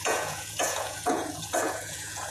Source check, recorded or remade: remade